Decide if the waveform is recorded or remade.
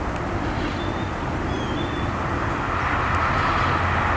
recorded